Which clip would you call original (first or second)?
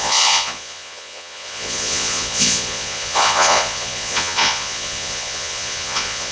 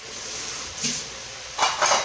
second